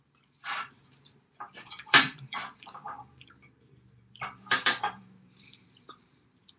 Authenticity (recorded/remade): remade